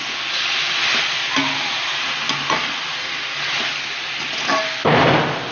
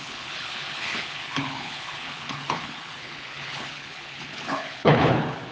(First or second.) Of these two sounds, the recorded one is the first